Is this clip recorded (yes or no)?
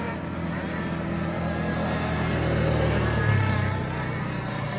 no